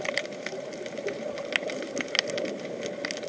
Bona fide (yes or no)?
yes